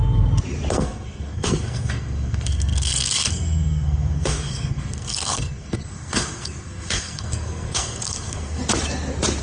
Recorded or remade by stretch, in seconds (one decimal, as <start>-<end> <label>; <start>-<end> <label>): 0.0-0.7 recorded; 0.7-8.6 remade; 8.6-9.4 recorded